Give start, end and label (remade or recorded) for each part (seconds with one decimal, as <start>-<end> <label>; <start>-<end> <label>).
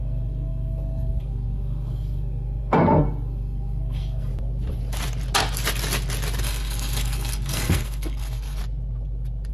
0.0-4.3 remade; 4.3-6.4 recorded; 6.4-8.6 remade; 8.6-9.5 recorded